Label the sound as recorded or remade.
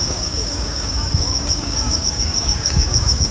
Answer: remade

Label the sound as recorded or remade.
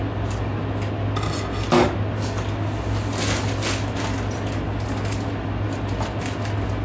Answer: recorded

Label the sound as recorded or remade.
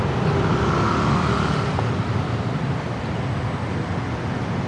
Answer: recorded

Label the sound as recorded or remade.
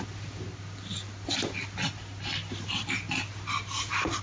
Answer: recorded